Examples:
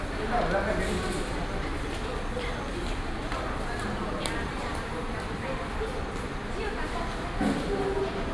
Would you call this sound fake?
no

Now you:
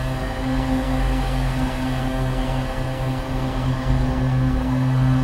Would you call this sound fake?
yes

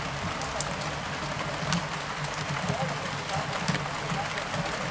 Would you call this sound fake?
no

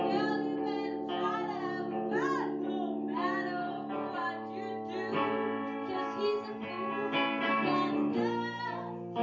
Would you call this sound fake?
no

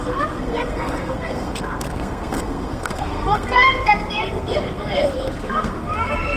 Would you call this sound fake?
yes